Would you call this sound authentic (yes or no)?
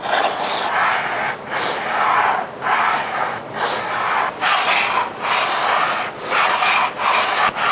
yes